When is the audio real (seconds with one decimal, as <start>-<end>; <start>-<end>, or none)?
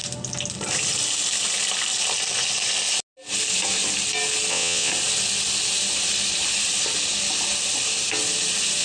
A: 0.0-4.5; 4.9-8.8